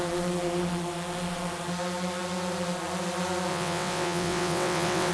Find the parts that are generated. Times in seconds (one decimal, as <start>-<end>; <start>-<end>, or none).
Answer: 3.5-5.1